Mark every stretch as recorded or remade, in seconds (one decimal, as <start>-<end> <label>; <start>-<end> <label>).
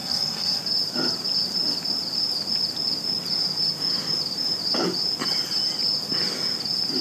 0.0-0.6 remade; 0.6-7.0 recorded